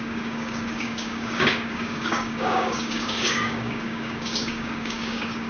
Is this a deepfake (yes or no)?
yes